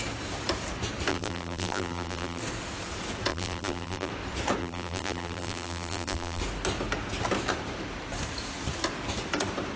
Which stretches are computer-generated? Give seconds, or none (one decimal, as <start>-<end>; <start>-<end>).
1.1-2.4; 3.3-4.1; 4.6-6.4